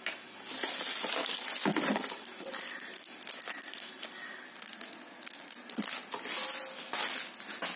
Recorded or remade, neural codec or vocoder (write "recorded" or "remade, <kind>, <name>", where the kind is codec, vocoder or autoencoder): recorded